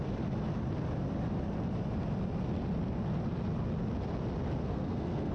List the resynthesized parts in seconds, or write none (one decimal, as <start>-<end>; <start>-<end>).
4.6-5.3